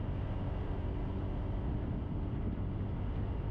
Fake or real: real